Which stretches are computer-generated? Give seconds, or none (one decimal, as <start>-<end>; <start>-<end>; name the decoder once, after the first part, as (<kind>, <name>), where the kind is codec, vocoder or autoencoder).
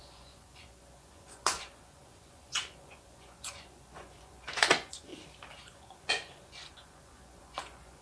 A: 0.0-5.1 (vocoder, Vocos); 5.6-8.0